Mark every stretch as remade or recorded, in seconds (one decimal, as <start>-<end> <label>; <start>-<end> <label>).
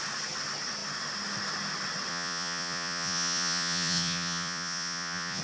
0.0-2.1 recorded; 2.1-5.4 remade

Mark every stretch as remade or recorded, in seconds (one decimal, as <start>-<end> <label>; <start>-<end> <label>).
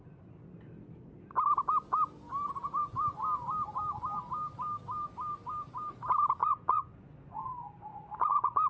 0.0-6.4 recorded; 6.4-7.5 remade; 7.5-7.9 recorded; 7.9-8.7 remade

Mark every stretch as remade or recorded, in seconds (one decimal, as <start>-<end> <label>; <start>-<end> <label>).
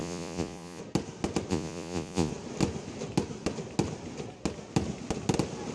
0.0-0.8 remade; 0.8-1.5 recorded; 1.5-2.3 remade; 2.3-5.7 recorded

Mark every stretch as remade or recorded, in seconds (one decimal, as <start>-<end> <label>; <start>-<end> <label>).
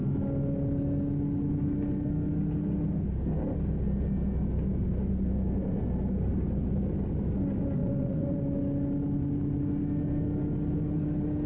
0.0-7.8 recorded; 7.8-8.4 remade; 8.4-11.5 recorded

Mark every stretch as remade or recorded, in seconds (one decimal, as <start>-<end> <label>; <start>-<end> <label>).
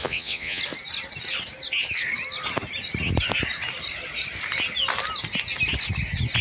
0.0-0.6 remade; 0.6-6.4 recorded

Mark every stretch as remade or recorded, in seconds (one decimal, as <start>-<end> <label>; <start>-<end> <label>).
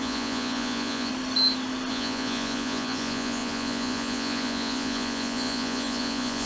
0.0-1.1 remade; 1.1-1.9 recorded; 1.9-6.5 remade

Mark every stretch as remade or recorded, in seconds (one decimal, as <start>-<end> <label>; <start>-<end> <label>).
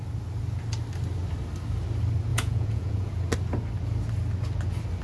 0.0-2.3 recorded; 2.3-3.1 remade; 3.1-5.0 recorded